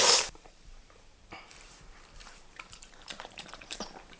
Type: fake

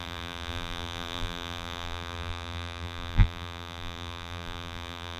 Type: fake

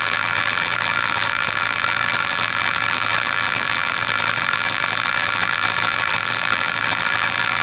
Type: fake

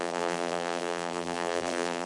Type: fake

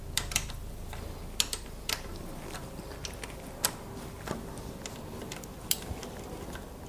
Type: real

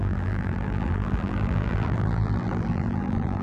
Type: fake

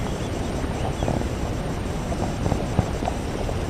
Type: fake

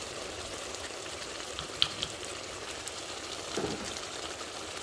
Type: fake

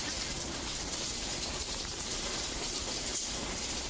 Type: fake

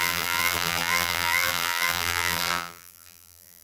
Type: fake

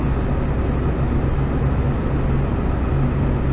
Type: real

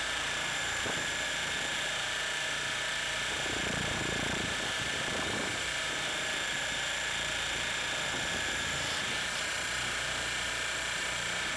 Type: fake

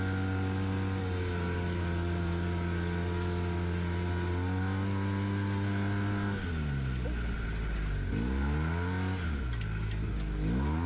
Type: real